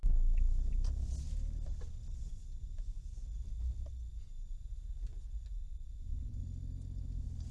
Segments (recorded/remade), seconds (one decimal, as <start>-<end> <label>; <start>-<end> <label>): 0.0-2.3 recorded; 2.3-3.2 remade; 3.2-4.1 recorded; 4.1-6.4 remade; 6.4-7.5 recorded

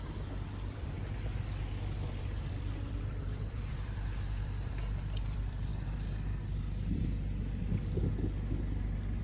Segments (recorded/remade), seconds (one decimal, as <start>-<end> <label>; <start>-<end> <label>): 0.0-5.7 remade; 5.7-9.2 recorded

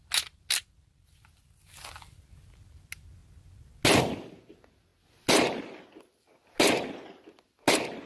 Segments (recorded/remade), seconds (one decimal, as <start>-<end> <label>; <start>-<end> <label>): 0.0-8.1 recorded